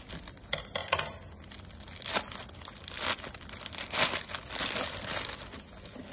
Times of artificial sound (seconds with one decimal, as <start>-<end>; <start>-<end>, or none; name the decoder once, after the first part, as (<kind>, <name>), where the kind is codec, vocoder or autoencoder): none